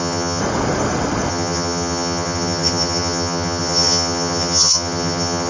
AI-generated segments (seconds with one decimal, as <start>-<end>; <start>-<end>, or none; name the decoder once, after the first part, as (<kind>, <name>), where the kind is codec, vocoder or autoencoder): 0.0-0.4 (vocoder, HiFi-GAN); 1.3-5.5

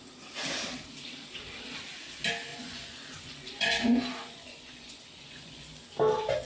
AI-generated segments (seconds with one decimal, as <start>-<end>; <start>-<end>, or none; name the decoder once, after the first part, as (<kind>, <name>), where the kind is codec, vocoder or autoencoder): 2.5-5.8 (vocoder, Vocos)

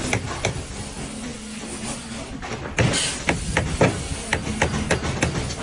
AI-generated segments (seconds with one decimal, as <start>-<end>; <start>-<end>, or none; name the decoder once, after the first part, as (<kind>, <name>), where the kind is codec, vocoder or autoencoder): none

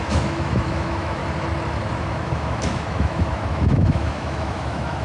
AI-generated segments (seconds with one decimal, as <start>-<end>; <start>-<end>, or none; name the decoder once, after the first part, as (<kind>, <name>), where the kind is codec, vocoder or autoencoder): 0.0-1.2 (autoencoder, DAC-VAE); 2.0-5.0

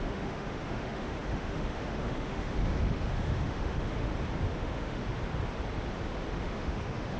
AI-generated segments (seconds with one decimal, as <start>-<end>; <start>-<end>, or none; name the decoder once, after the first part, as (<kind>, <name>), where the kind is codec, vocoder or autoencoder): 0.0-4.1 (autoencoder, DAC-VAE); 4.6-5.0; 6.4-7.2

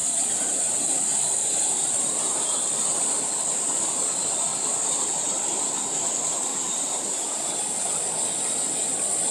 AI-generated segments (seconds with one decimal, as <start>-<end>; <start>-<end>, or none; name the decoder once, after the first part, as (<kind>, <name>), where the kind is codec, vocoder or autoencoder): 0.0-2.5 (vocoder, BigVGAN v2); 4.5-5.7; 6.5-7.6

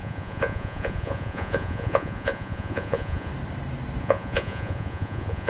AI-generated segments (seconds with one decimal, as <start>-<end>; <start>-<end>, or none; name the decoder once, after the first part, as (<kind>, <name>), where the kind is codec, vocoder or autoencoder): 0.0-3.3 (vocoder, Vocos); 4.0-5.5